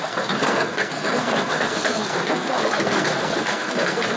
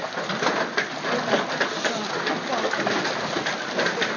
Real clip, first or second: second